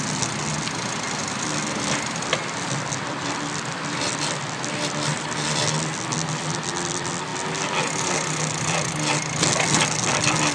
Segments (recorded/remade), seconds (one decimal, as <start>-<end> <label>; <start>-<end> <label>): 0.0-1.2 recorded; 1.2-4.2 remade; 4.2-7.3 recorded; 7.3-8.3 remade; 8.3-10.5 recorded